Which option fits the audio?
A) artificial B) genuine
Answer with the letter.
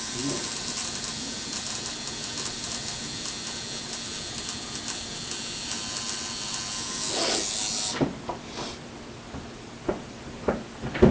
B